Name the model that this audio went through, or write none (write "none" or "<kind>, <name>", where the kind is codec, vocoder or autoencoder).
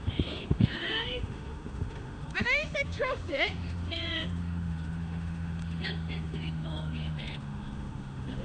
autoencoder, DAC-VAE